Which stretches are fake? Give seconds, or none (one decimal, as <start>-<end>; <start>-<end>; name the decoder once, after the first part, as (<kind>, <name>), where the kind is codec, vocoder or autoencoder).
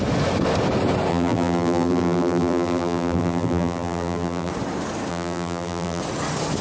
1.1-4.5 (vocoder, BigVGAN v2); 5.1-6.0